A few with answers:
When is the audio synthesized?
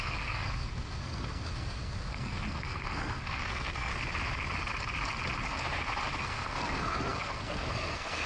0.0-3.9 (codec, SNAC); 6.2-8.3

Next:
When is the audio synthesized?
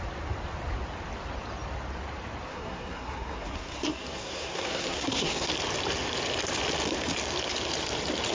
2.5-5.5 (codec, SNAC)